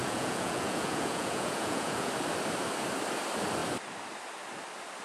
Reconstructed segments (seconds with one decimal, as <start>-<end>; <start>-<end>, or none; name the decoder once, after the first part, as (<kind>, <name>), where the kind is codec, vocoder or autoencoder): 0.0-2.1 (vocoder, Vocos)